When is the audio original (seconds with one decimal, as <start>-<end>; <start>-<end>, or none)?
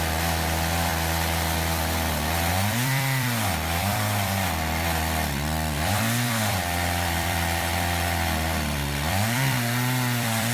0.9-2.5